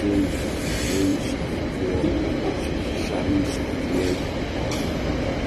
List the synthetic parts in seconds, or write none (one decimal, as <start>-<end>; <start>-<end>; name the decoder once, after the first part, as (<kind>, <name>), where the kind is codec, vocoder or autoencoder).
1.1-2.3 (vocoder, BigVGAN v2); 3.1-4.6